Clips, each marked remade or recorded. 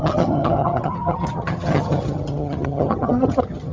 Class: remade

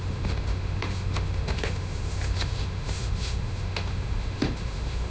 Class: remade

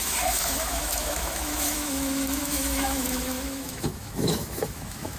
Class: remade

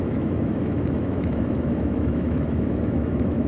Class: remade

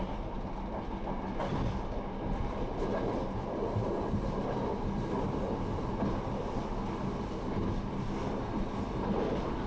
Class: recorded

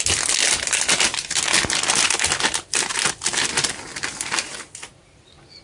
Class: recorded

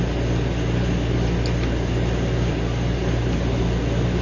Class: recorded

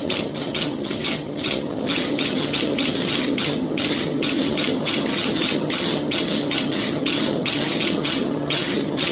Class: remade